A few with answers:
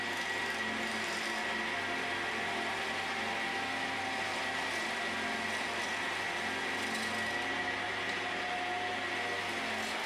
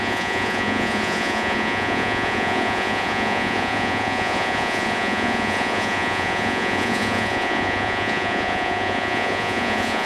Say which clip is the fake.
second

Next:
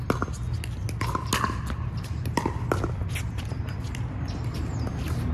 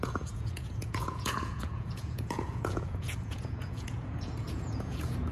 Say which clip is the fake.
second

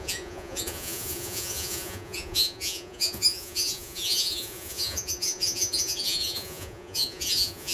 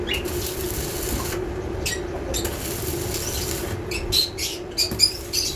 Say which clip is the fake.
first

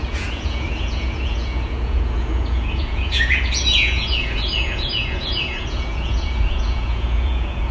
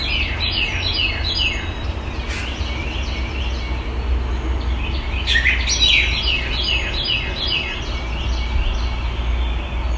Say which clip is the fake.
first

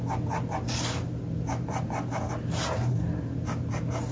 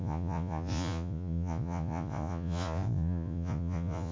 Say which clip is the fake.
second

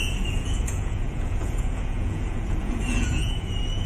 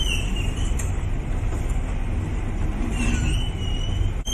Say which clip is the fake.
first